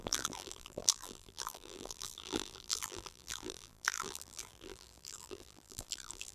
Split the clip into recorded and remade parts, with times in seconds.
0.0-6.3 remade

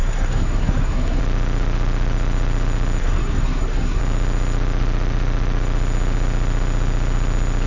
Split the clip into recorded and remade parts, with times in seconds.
0.0-1.2 remade; 1.2-3.0 recorded; 3.0-4.0 remade; 4.0-7.7 recorded

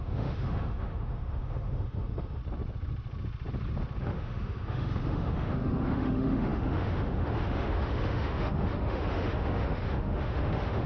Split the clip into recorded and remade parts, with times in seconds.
0.0-2.4 remade; 2.4-4.0 recorded; 4.0-10.9 remade

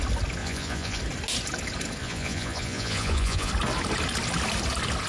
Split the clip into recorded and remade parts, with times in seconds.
0.0-0.4 recorded; 0.4-1.0 remade; 1.0-2.0 recorded; 2.0-3.5 remade; 3.5-5.1 recorded